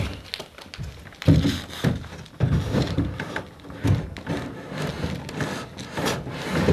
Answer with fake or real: real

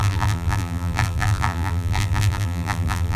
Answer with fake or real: fake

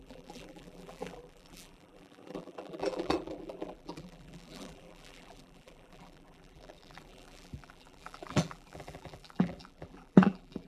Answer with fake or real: fake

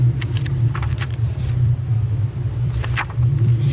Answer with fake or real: fake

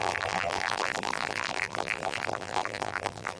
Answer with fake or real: fake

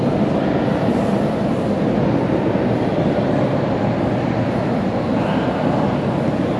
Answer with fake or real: real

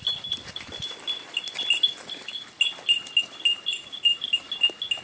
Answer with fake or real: real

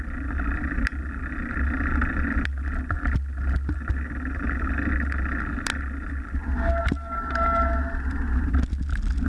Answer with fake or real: real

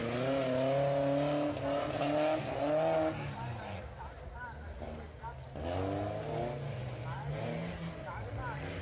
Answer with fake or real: real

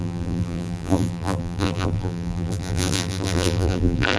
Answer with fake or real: fake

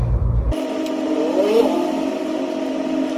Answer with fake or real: real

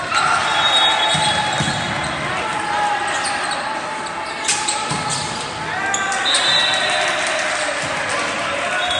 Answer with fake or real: real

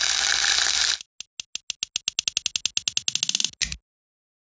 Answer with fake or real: real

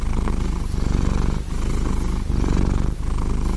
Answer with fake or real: real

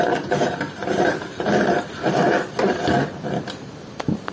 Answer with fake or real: fake